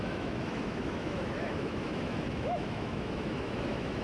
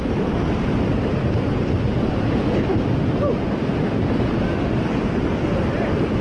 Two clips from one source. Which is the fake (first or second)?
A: first